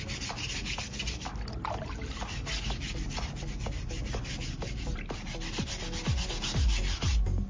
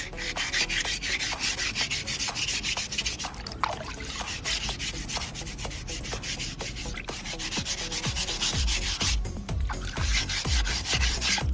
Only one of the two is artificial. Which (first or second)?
second